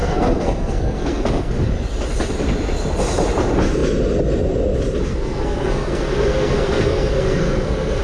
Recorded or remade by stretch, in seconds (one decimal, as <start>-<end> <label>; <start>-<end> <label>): 0.0-1.5 remade; 1.5-5.1 recorded; 5.1-8.0 remade